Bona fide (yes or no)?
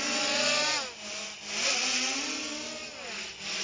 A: yes